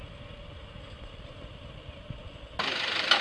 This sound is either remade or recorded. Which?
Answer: recorded